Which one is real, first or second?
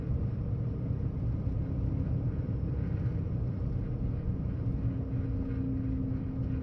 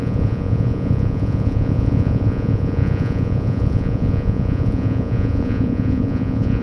first